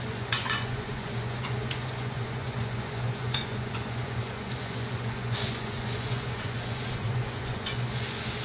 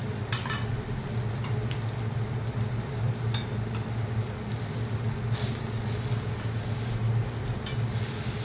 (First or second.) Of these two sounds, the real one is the second